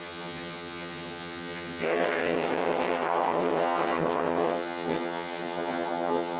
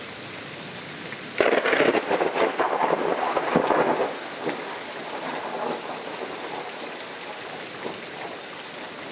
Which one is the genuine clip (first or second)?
second